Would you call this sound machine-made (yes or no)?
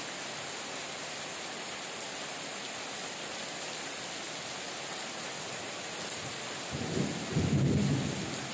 no